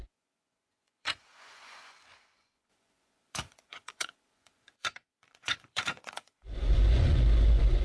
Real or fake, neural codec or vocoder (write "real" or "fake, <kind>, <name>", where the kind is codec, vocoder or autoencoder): fake, vocoder, Vocos